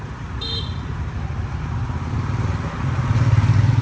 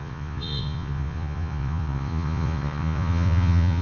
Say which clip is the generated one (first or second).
second